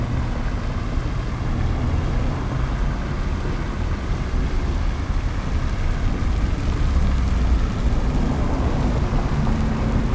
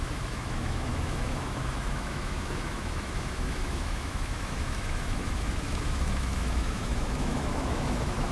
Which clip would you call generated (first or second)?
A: second